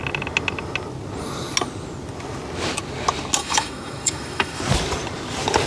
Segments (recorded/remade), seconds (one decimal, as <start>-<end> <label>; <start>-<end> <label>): 0.0-3.4 recorded; 3.4-4.6 remade; 4.6-5.7 recorded